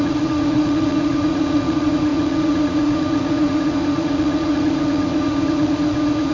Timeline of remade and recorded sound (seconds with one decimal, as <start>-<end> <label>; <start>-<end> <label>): 0.0-6.3 remade